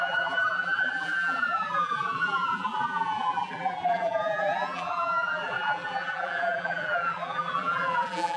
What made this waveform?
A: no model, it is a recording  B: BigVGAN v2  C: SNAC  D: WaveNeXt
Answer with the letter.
B